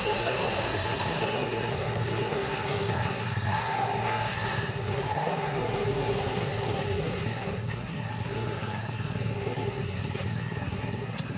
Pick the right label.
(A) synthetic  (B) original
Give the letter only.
A